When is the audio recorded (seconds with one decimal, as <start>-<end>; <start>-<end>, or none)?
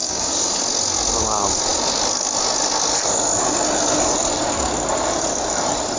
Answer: 0.6-6.0